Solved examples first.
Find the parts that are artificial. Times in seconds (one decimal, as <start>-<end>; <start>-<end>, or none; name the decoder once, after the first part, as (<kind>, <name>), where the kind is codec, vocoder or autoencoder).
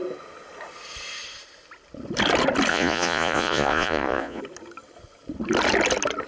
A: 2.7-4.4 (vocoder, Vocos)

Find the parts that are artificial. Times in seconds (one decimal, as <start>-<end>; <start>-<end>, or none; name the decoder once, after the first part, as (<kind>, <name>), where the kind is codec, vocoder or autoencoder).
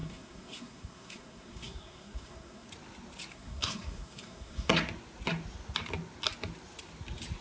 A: 0.0-2.7 (codec, SNAC); 3.3-4.7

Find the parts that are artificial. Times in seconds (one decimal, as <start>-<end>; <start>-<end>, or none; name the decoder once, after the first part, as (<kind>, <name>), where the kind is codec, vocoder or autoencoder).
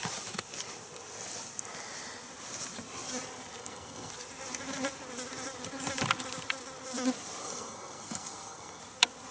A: 3.6-4.1 (codec, SNAC); 7.4-8.8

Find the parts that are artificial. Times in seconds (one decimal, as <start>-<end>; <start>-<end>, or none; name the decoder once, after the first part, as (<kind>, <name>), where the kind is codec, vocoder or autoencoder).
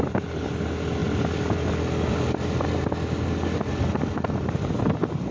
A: none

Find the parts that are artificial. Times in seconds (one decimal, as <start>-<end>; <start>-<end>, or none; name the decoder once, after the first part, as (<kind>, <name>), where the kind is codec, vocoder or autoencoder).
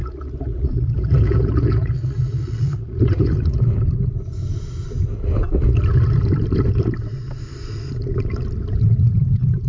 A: 0.0-3.6 (vocoder, Vocos)